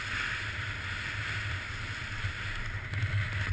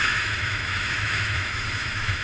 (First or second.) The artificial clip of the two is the second